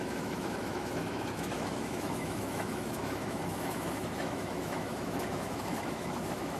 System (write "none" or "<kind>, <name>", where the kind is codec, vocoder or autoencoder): autoencoder, DAC-VAE